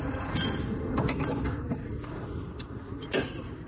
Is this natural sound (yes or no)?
yes